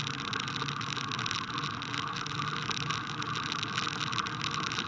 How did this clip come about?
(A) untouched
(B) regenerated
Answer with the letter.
A